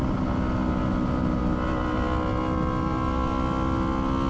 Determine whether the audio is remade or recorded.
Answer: recorded